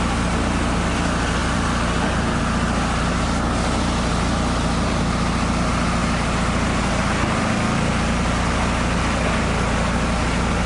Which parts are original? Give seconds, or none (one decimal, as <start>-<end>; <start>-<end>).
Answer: 0.0-10.7